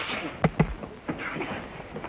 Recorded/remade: recorded